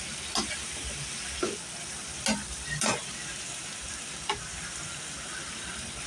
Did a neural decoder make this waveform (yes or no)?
no